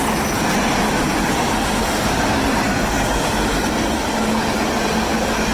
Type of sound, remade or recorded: recorded